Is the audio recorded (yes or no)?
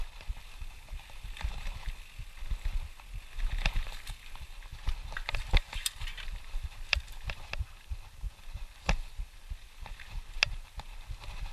yes